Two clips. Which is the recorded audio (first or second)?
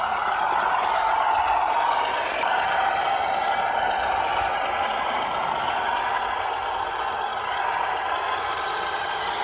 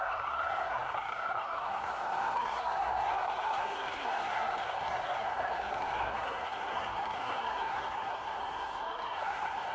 first